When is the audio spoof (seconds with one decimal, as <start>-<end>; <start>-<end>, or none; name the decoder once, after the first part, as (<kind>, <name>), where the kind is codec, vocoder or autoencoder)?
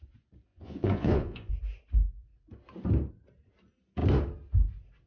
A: 0.5-1.5 (vocoder, Vocos)